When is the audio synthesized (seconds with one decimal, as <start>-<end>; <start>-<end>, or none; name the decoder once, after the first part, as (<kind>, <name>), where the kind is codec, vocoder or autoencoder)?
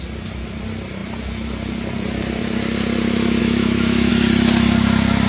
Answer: 3.4-4.1 (autoencoder, DAC-VAE)